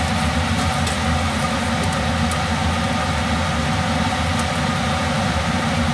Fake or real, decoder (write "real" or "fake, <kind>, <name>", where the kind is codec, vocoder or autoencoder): real